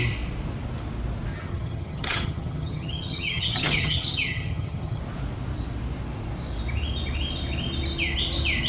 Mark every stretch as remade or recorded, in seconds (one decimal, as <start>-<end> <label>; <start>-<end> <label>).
0.0-1.3 recorded; 1.3-5.0 remade; 5.0-8.7 recorded